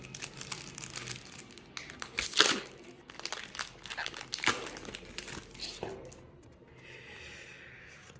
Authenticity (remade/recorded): recorded